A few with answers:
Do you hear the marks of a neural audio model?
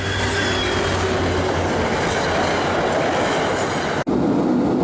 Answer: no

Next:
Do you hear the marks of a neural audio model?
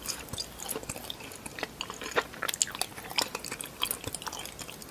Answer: no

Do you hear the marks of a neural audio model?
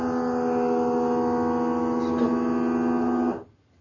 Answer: no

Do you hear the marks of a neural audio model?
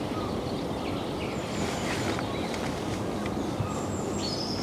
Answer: no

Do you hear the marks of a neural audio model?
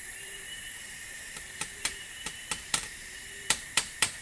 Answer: yes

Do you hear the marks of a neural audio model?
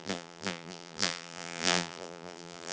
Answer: yes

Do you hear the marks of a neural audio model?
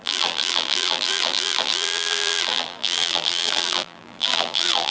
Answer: yes